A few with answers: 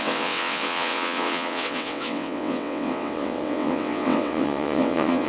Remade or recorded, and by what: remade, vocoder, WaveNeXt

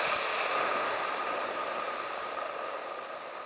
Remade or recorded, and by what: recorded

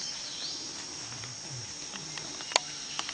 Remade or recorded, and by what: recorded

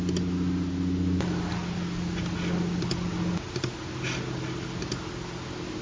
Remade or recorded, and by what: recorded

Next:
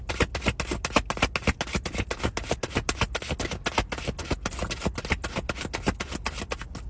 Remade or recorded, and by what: recorded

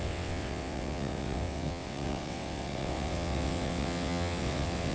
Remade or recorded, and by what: remade, vocoder, WaveNeXt